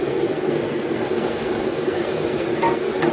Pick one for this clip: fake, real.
fake